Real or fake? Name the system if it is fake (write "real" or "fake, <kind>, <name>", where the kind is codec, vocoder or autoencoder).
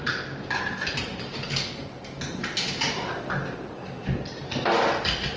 real